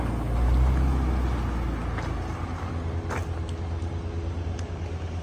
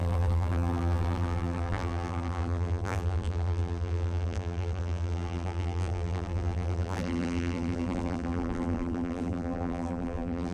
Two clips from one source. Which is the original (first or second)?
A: first